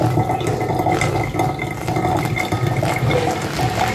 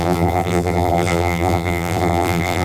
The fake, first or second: second